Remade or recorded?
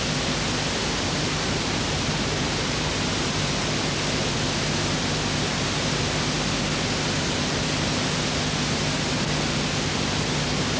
recorded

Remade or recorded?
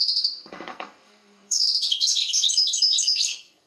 remade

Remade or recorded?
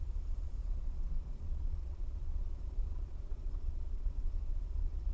remade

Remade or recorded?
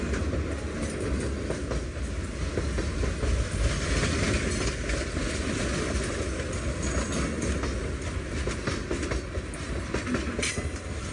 recorded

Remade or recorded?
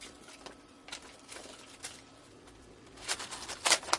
recorded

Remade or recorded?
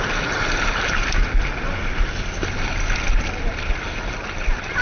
recorded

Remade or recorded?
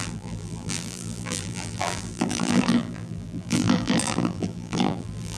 remade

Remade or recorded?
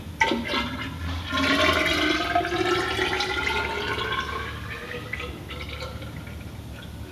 recorded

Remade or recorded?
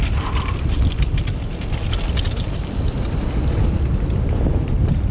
recorded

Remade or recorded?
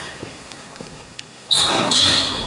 remade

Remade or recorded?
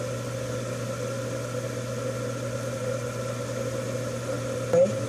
recorded